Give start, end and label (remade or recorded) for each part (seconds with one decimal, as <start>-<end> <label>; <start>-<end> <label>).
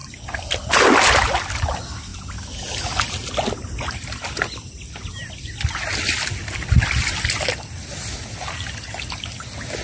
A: 0.0-9.8 recorded